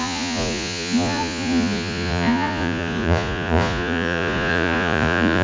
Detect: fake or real fake